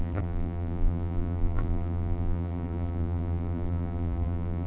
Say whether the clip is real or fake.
fake